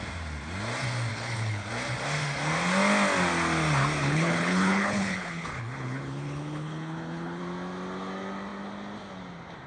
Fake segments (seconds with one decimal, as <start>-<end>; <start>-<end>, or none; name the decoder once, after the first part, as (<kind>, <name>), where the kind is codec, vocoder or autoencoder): 1.1-1.7 (codec, HILCodec); 4.0-7.4